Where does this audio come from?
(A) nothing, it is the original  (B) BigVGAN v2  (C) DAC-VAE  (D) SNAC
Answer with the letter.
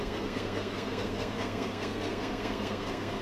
D